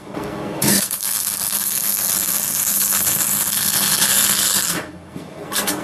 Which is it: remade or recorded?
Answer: remade